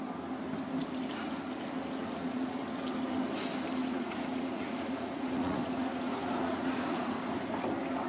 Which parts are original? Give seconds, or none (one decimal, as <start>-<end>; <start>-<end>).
0.0-2.0; 2.6-3.8; 7.1-8.1